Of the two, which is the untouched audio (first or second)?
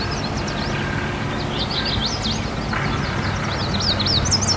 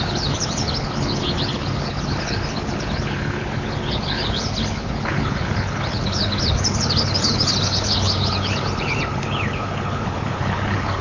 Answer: first